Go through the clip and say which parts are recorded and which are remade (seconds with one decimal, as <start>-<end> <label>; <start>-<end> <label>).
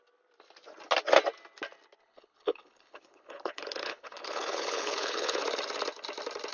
0.0-2.0 recorded; 2.0-5.4 remade; 5.4-6.5 recorded